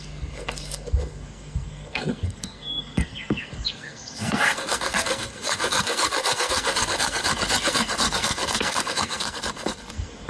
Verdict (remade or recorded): remade